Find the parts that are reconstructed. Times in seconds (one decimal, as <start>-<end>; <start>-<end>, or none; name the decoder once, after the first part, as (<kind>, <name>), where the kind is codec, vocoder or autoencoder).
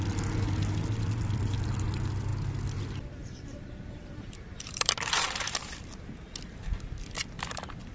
3.2-5.8 (vocoder, BigVGAN v2)